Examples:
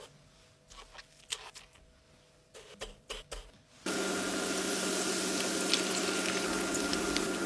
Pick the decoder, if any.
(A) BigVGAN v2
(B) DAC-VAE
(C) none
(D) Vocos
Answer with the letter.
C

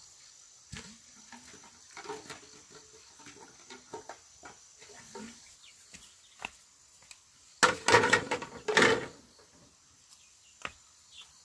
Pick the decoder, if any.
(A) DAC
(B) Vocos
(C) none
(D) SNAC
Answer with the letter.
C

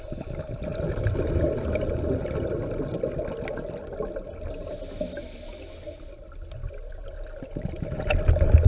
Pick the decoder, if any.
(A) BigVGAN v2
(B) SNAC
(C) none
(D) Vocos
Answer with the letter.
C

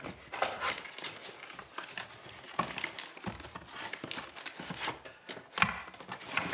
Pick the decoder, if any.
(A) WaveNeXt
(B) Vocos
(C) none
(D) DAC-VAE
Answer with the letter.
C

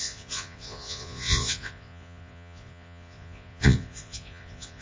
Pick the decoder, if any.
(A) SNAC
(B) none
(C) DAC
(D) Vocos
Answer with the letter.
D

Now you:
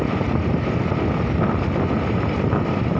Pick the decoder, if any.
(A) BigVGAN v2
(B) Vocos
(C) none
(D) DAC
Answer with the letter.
C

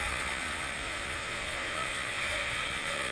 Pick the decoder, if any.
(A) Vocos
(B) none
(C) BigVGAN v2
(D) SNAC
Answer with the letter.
A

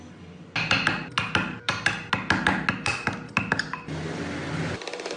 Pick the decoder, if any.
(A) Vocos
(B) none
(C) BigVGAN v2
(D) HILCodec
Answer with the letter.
B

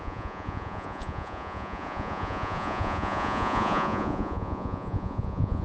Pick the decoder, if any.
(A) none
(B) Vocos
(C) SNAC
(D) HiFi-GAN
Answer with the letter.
B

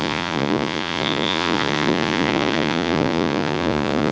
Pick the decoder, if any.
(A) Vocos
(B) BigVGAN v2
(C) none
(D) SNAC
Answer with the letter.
A